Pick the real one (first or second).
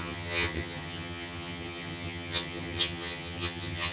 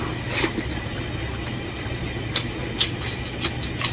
second